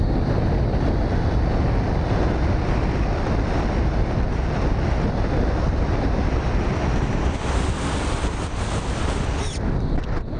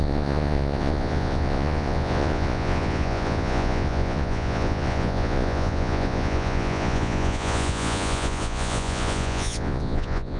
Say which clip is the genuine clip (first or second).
first